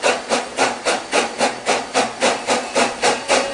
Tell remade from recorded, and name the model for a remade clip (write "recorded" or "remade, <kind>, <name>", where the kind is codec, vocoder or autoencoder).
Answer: recorded